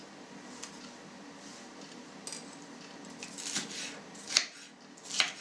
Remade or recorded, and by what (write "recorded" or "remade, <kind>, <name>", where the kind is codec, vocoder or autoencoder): recorded